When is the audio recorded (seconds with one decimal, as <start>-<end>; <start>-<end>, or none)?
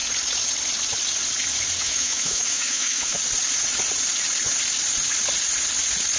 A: 0.0-1.8; 3.2-6.2